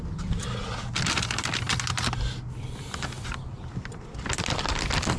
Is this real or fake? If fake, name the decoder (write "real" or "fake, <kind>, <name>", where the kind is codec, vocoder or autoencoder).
real